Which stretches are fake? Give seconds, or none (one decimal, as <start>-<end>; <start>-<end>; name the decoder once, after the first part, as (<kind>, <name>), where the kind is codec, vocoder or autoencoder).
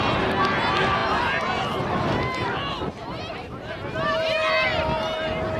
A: none